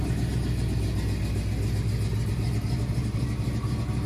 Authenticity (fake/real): real